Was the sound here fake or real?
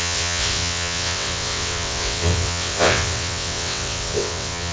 fake